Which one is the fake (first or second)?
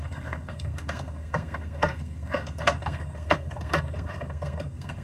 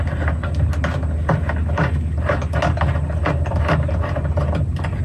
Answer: first